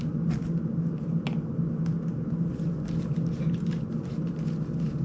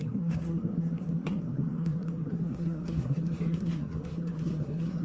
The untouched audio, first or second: first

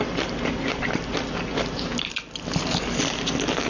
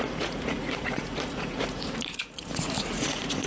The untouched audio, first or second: first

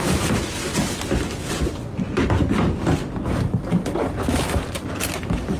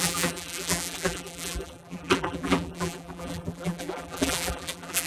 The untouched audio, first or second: first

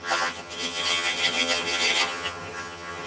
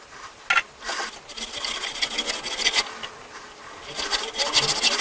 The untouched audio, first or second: second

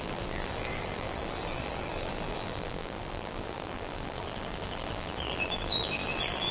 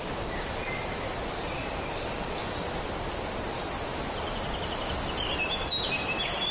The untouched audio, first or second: second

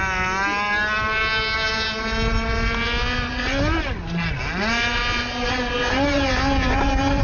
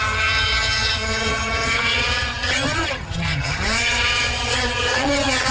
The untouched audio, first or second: first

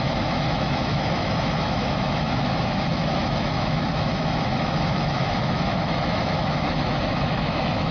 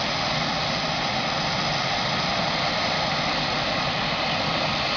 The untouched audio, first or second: second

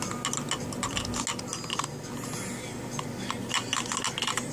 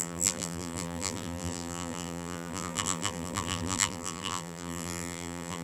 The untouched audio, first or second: first